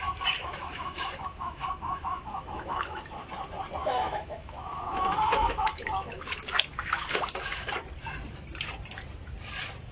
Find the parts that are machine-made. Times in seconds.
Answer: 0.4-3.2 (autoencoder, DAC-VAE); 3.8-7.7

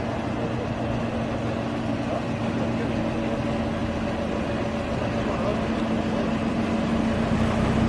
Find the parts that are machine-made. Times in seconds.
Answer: none

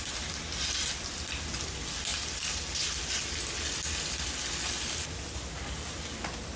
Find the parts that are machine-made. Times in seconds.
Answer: none

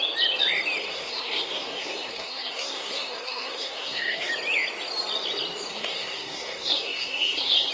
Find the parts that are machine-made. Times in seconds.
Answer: 0.8-4.3 (codec, SNAC); 5.7-7.7

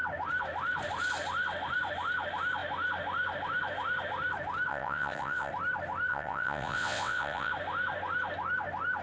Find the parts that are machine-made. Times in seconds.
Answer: 4.7-5.5 (vocoder, WaveNeXt); 6.1-7.5

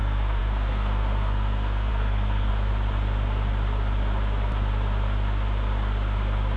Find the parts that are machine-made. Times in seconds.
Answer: 0.0-2.5 (codec, SNAC)

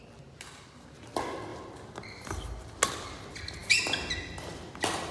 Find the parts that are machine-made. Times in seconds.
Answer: none